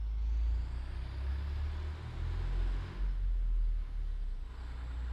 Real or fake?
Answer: real